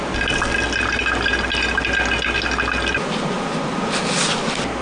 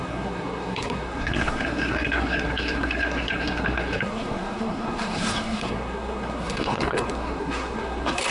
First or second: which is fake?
second